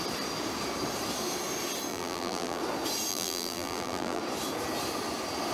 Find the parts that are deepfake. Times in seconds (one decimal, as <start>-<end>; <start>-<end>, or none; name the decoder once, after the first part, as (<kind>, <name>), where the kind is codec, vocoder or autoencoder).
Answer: 1.9-2.6 (vocoder, BigVGAN v2); 3.1-4.2